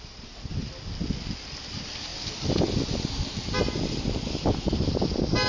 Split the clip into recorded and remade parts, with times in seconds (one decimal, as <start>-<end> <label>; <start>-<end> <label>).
0.0-5.5 recorded